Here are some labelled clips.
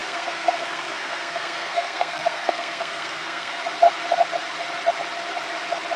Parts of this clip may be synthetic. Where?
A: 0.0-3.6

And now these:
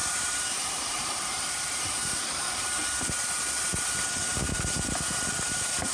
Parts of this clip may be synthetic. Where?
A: 0.0-2.8; 5.3-5.9

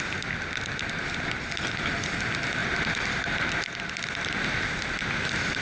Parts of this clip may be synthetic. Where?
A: none

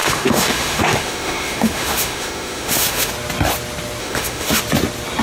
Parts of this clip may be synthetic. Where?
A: 0.0-3.1; 4.0-4.6

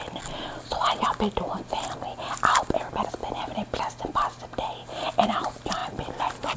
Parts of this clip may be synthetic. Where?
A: none

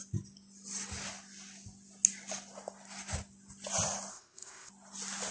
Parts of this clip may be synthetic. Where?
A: 4.1-4.7